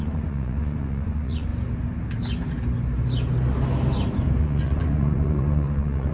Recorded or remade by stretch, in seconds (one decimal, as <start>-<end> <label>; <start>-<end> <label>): 0.0-1.5 remade; 1.5-4.4 recorded; 4.4-6.1 remade